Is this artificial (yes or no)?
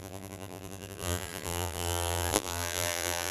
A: yes